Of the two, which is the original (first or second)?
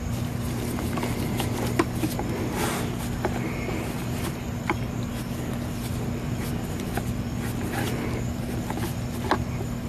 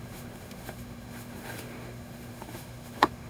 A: first